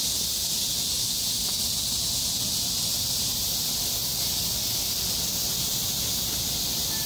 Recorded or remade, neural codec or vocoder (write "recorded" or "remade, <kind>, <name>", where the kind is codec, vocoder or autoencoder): recorded